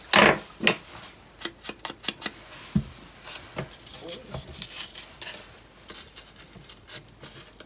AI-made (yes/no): no